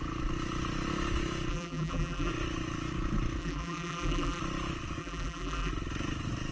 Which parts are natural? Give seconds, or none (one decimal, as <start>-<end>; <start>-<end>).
0.0-1.5; 2.3-3.4; 4.4-5.0; 5.7-6.5